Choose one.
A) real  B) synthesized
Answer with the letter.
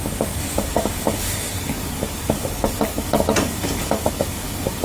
B